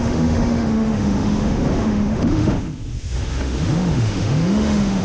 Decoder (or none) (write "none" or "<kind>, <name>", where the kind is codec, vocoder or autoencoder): autoencoder, DAC-VAE